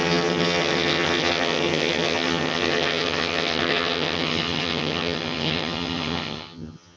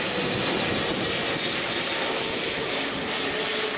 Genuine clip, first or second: second